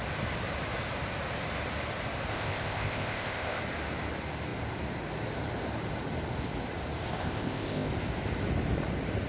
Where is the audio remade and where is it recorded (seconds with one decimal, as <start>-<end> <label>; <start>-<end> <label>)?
0.0-2.3 recorded; 2.3-3.6 remade; 3.6-7.2 recorded; 7.2-7.9 remade; 7.9-9.3 recorded